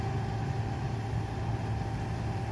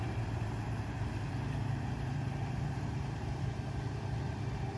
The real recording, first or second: first